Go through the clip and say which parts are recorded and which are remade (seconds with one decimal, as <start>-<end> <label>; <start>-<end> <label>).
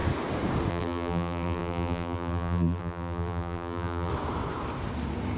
0.0-0.7 recorded; 0.7-4.1 remade; 4.1-5.4 recorded